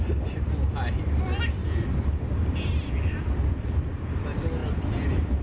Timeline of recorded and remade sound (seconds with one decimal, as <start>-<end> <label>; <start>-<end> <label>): 0.0-1.6 recorded; 1.6-2.2 remade; 2.2-5.4 recorded